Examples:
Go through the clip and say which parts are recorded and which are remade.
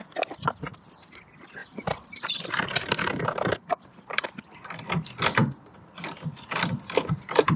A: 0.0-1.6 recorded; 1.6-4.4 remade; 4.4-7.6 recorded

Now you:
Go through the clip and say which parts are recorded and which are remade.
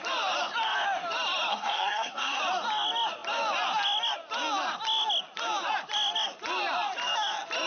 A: 0.0-1.5 recorded; 1.5-2.4 remade; 2.4-7.7 recorded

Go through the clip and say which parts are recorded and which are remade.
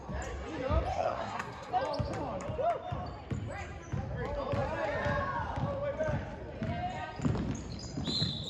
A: 0.0-0.9 recorded; 0.9-1.7 remade; 1.7-8.5 recorded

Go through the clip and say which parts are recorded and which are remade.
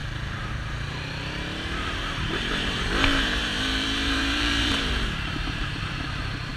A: 0.0-0.5 recorded; 0.5-6.6 remade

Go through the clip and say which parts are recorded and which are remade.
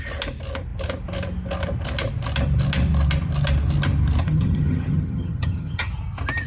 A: 0.0-4.2 recorded; 4.2-5.9 remade; 5.9-6.5 recorded